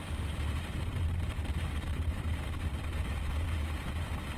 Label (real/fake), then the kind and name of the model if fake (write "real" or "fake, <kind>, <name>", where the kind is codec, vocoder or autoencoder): fake, vocoder, BigVGAN v2